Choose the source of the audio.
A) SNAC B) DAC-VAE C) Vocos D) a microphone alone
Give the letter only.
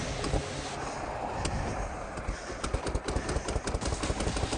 D